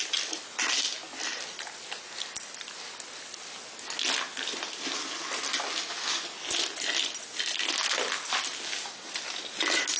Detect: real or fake real